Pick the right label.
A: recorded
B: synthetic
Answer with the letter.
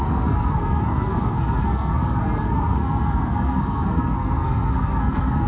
B